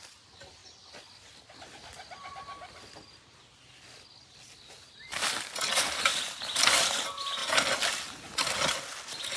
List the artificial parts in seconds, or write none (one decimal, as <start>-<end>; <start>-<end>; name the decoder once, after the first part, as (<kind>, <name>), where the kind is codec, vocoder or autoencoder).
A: none